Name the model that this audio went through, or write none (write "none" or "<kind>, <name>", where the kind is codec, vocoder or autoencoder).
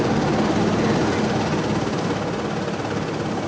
none